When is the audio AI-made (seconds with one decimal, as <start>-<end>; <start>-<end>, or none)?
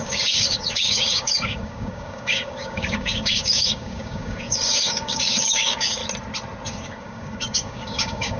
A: 0.0-6.0; 6.7-8.4